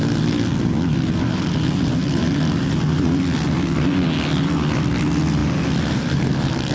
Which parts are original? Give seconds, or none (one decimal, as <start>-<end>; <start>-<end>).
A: 0.0-5.4; 6.3-6.7